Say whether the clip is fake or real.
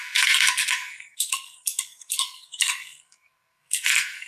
fake